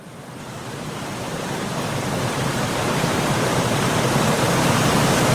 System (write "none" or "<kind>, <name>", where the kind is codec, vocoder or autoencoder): vocoder, BigVGAN v2